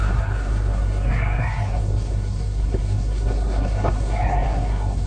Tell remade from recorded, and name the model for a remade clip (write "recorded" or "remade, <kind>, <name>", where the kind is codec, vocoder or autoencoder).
remade, codec, SNAC